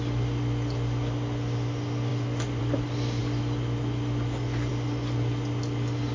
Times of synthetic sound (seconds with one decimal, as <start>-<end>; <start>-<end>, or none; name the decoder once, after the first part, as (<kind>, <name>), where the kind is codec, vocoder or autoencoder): none